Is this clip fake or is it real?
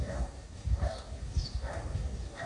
fake